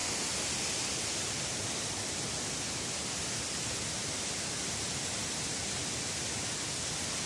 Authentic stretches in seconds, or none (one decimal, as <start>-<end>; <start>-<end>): 0.0-7.3